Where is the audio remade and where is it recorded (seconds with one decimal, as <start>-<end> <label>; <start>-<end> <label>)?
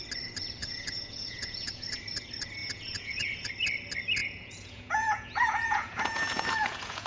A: 0.0-0.6 recorded; 0.6-2.0 remade; 2.0-2.6 recorded; 2.6-3.5 remade; 3.5-4.2 recorded; 4.2-7.1 remade